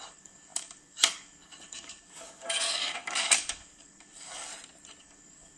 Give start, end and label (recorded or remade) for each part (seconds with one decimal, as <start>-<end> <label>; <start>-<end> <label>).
0.0-4.5 remade; 4.5-5.0 recorded; 5.0-5.6 remade